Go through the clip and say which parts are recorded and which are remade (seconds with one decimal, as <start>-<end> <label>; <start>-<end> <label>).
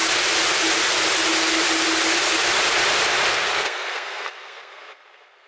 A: 0.0-3.3 recorded; 3.3-5.5 remade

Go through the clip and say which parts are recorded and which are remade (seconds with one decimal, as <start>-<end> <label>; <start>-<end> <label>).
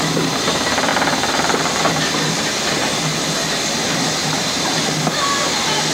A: 0.0-0.9 recorded; 0.9-1.8 remade; 1.8-5.9 recorded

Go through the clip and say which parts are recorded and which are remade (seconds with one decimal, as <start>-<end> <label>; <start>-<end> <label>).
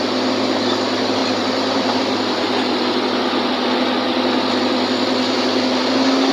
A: 0.0-1.2 recorded; 1.2-2.0 remade; 2.0-6.3 recorded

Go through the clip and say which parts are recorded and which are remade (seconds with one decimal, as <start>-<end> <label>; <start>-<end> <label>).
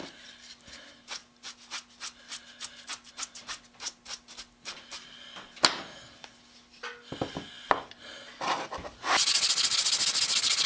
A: 0.0-10.7 recorded